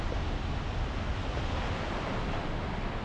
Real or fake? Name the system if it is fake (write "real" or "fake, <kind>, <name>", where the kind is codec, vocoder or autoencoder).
real